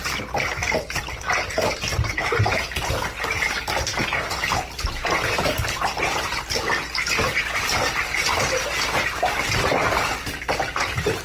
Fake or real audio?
real